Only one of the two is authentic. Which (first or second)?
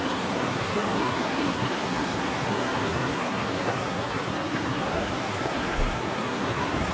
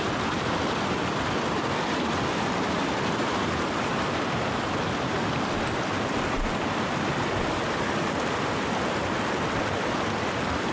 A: second